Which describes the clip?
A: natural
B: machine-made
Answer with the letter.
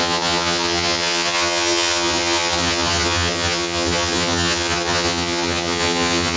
B